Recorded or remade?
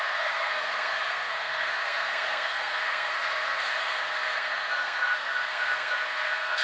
remade